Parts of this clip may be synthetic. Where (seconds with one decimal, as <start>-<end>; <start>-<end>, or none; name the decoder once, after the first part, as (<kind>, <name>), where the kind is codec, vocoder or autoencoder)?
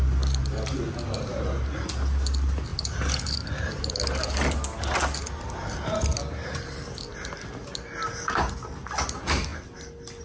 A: none